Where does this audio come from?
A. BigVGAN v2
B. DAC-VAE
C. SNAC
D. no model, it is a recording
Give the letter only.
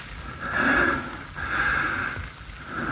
D